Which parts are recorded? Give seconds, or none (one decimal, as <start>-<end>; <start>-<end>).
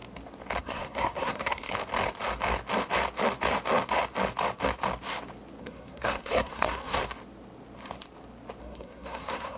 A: 0.0-0.6; 1.7-5.6; 7.0-8.6